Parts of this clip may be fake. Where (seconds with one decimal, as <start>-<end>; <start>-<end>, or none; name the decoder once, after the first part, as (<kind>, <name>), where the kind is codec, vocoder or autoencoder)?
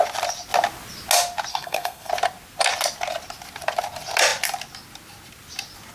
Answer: 1.5-2.1 (codec, SNAC)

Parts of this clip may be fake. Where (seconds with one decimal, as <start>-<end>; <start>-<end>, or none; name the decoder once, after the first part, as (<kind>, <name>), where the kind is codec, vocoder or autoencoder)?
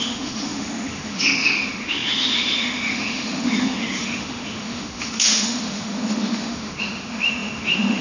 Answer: 0.0-8.0 (autoencoder, DAC-VAE)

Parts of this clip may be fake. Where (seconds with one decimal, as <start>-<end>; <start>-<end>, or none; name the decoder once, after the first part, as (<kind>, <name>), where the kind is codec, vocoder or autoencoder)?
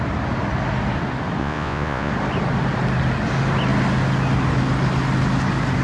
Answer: 1.4-2.1 (vocoder, Vocos)